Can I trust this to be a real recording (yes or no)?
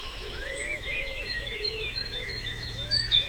no